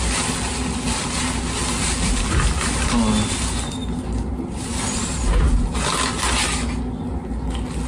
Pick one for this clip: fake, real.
real